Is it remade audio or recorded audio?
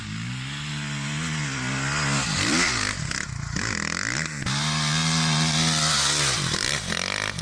recorded